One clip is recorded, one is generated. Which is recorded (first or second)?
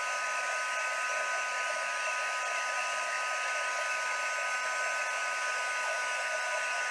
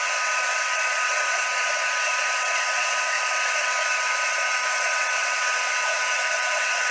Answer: first